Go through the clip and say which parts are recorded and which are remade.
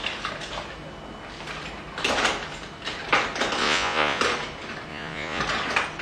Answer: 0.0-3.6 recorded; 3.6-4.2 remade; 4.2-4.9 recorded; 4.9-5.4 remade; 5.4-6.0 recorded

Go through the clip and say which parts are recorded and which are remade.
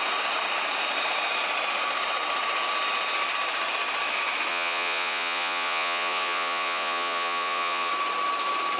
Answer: 0.0-4.5 recorded; 4.5-7.9 remade; 7.9-8.8 recorded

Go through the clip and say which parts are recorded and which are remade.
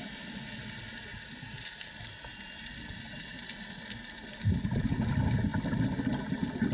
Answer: 0.0-6.7 recorded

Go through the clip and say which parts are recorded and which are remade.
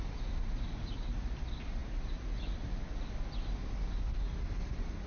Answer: 0.0-5.1 recorded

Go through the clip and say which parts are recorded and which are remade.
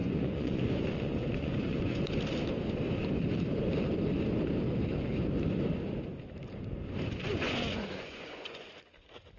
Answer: 0.0-2.1 remade; 2.1-7.3 recorded; 7.3-8.7 remade; 8.7-9.4 recorded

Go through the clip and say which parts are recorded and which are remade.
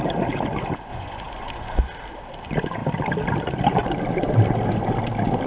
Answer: 0.0-0.9 recorded; 0.9-1.8 remade; 1.8-5.5 recorded